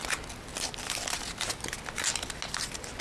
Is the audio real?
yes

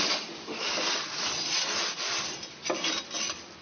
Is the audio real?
yes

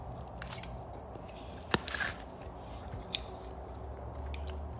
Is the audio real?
yes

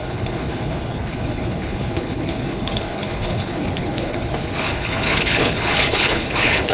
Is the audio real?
no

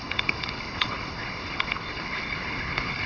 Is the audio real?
no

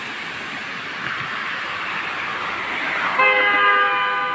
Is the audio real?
yes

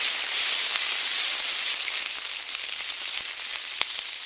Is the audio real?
yes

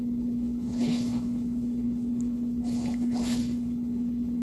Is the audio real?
no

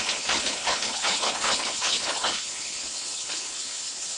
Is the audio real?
no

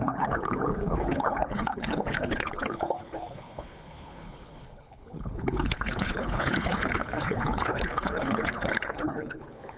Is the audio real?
no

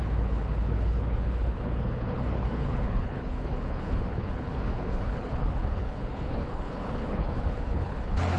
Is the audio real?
no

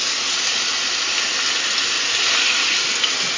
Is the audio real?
yes